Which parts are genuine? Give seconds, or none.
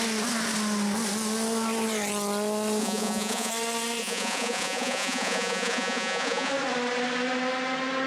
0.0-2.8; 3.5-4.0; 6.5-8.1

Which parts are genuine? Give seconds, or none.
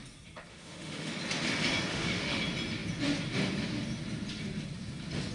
0.0-0.5; 1.1-1.9; 2.4-5.3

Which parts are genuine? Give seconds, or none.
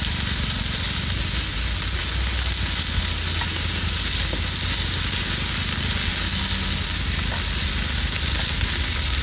0.0-9.2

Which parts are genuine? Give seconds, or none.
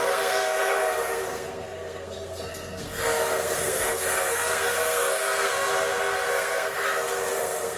5.7-6.3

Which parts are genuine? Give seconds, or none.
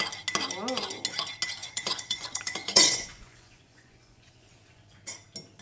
0.0-1.6; 5.0-5.6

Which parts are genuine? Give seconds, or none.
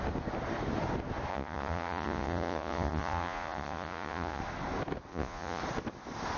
0.0-1.3; 4.4-5.1; 5.6-6.4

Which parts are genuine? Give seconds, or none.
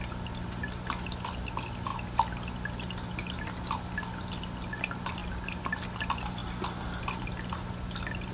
0.0-8.3